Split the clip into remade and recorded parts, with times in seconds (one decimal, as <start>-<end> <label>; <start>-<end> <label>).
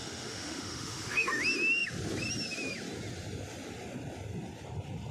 0.0-1.4 remade; 1.4-5.1 recorded